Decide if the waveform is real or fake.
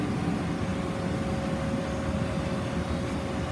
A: real